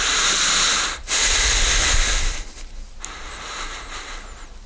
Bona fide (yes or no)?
yes